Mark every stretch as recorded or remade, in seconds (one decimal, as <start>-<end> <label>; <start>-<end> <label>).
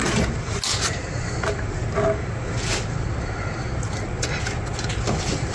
0.0-1.1 recorded; 1.1-1.8 remade; 1.8-5.1 recorded; 5.1-5.5 remade